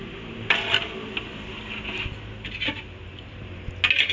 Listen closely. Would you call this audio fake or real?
real